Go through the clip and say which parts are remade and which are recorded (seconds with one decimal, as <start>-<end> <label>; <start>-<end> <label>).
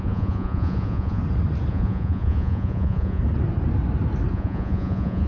0.0-1.2 remade; 1.2-1.7 recorded; 1.7-3.2 remade; 3.2-4.3 recorded; 4.3-5.3 remade